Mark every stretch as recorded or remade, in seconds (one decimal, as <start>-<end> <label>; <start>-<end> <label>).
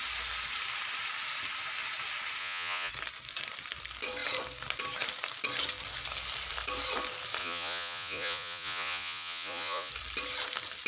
0.0-2.4 recorded; 2.4-2.9 remade; 2.9-7.4 recorded; 7.4-9.9 remade; 9.9-10.9 recorded